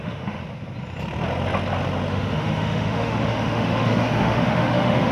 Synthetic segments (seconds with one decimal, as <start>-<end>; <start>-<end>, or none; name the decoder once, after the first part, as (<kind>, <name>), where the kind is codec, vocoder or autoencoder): 0.0-0.4 (autoencoder, DAC-VAE); 2.1-5.1